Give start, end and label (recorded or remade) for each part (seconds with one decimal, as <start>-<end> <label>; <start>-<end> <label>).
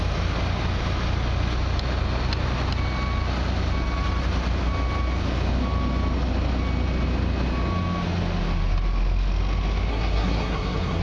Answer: 0.0-9.9 recorded; 9.9-11.0 remade